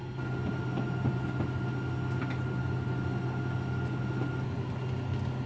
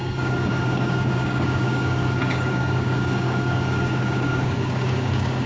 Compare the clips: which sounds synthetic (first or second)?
second